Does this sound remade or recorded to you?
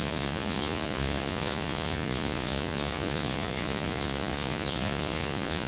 remade